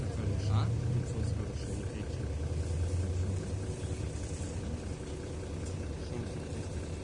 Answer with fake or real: real